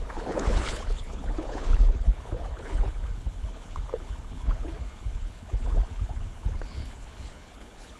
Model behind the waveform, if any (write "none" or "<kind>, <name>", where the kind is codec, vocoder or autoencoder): codec, HILCodec